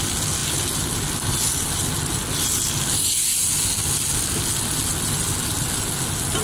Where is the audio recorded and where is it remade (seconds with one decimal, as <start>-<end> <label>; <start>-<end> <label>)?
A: 0.0-6.4 recorded